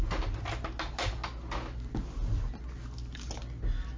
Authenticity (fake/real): real